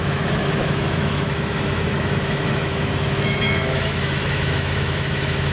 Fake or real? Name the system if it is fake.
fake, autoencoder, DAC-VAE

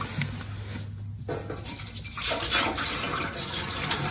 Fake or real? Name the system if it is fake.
real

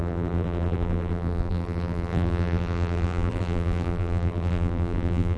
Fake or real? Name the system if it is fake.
fake, vocoder, BigVGAN v2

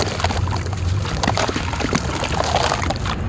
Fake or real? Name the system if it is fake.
real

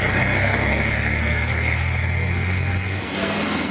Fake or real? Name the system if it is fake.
fake, codec, SNAC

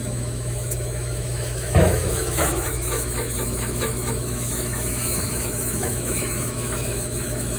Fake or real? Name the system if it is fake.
fake, autoencoder, DAC-VAE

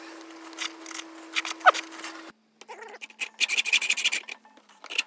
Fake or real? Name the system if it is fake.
real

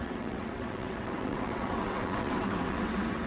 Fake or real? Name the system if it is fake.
fake, vocoder, WaveNeXt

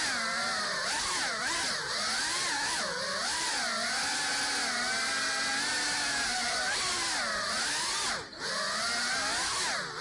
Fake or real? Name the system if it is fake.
real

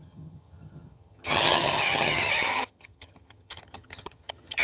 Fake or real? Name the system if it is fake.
fake, vocoder, HiFi-GAN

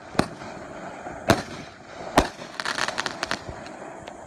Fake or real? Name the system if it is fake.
real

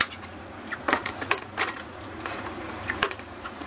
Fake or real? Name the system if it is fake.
fake, vocoder, Vocos